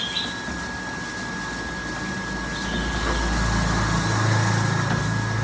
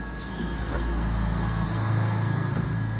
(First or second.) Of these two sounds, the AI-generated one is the second